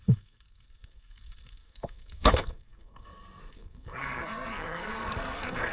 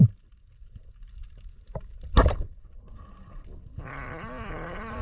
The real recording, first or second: second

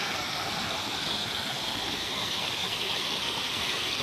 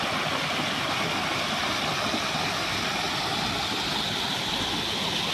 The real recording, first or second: second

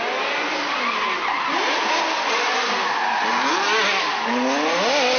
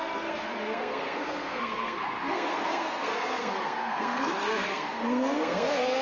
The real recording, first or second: first